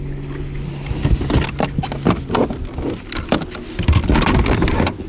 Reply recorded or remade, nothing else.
recorded